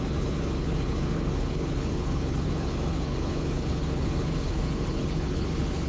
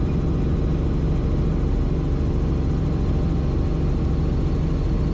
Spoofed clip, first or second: first